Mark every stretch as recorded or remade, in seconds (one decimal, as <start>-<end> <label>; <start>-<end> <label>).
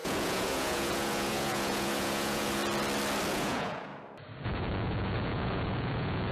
0.0-2.6 remade; 2.6-3.3 recorded; 3.3-3.9 remade; 3.9-4.4 recorded; 4.4-6.3 remade